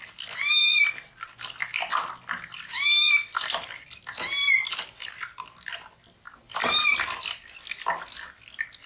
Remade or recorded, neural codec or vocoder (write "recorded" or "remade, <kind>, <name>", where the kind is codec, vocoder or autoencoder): recorded